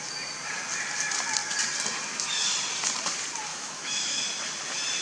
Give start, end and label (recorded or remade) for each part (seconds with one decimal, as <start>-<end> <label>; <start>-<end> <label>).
0.0-3.5 recorded; 3.5-4.2 remade; 4.2-5.0 recorded